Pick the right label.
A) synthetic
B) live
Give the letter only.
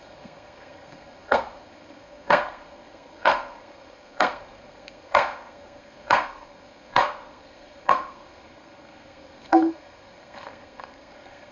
A